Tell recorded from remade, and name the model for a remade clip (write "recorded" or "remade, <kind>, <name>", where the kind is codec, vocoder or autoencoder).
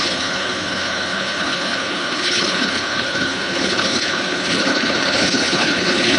remade, codec, HILCodec